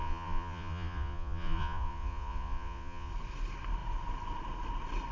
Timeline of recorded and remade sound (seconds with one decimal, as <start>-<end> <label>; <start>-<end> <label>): 0.0-3.1 remade; 3.1-5.1 recorded

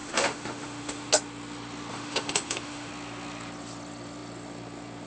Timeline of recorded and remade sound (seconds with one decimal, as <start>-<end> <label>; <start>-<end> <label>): 0.0-1.1 remade; 1.1-1.9 recorded; 1.9-2.9 remade; 2.9-5.1 recorded

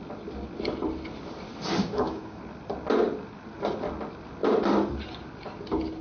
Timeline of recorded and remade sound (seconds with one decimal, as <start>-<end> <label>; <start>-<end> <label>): 0.0-1.8 recorded; 1.8-2.4 remade; 2.4-6.0 recorded

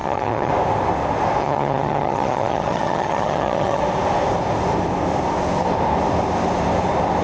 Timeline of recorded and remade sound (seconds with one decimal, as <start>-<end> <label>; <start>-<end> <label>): 0.0-0.5 remade; 0.5-1.4 recorded; 1.4-3.8 remade; 3.8-7.2 recorded

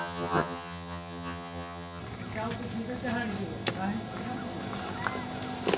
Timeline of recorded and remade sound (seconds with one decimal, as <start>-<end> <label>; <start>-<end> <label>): 0.0-2.0 remade; 2.0-5.8 recorded

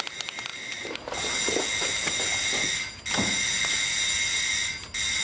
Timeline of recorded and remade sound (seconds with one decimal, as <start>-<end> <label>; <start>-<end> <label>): 0.0-5.2 recorded